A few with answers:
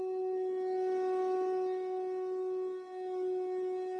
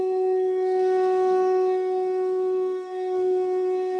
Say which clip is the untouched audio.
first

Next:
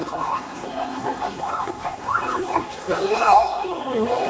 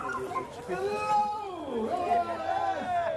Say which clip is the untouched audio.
second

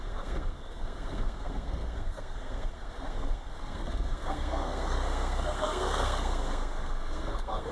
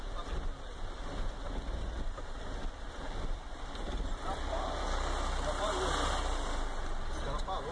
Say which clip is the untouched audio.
second